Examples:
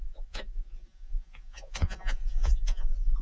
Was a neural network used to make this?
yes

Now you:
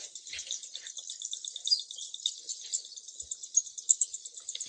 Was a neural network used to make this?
no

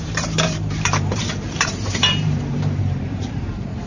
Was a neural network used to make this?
yes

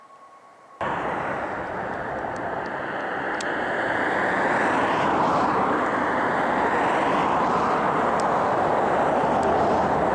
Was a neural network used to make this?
yes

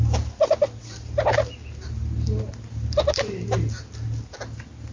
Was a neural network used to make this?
no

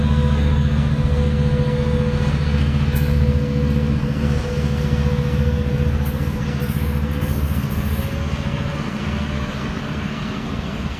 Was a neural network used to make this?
yes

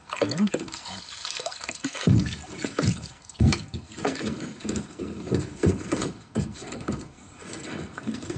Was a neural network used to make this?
yes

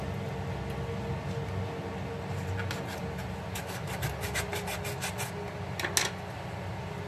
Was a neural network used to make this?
no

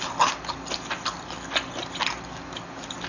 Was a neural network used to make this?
no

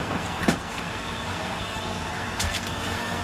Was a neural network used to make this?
yes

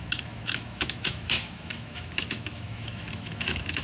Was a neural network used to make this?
yes